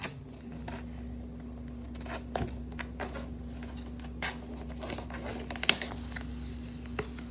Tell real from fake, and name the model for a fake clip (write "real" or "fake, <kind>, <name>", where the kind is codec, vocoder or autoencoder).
real